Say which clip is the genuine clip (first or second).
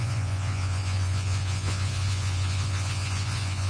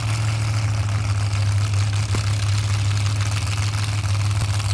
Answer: second